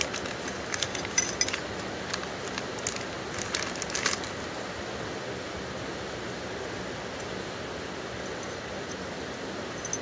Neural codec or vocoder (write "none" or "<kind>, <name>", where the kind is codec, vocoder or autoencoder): none